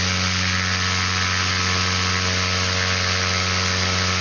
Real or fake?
real